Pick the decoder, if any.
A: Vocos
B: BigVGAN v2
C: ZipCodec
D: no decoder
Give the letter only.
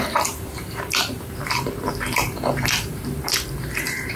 B